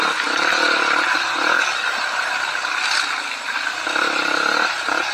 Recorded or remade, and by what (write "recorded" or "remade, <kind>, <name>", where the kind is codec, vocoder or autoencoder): recorded